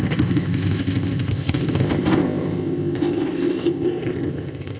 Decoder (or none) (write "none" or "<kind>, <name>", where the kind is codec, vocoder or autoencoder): codec, ZipCodec